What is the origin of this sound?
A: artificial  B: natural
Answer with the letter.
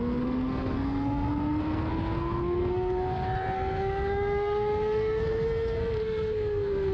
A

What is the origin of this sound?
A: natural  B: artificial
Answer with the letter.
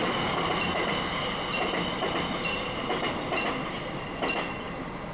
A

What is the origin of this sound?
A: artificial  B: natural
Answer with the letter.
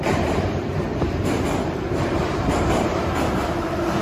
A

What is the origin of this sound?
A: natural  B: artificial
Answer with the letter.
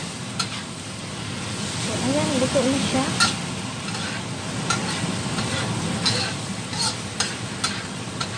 A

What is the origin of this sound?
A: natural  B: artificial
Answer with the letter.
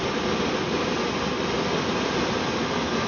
A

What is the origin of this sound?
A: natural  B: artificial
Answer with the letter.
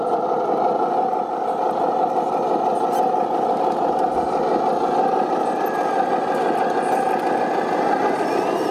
A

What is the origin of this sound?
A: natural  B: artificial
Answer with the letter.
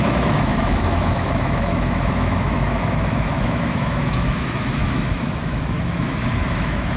B